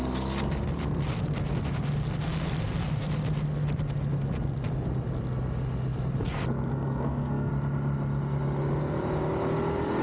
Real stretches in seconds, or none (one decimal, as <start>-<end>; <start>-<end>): 0.0-6.7; 7.5-10.0